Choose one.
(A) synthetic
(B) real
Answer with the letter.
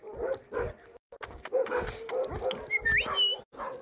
B